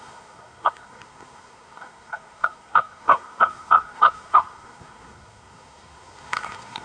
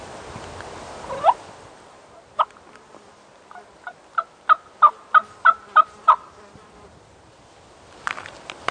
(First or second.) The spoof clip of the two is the first